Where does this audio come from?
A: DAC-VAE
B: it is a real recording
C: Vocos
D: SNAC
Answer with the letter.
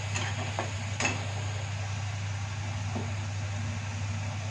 B